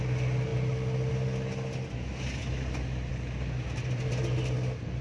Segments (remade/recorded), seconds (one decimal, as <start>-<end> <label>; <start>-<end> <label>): 0.0-5.0 recorded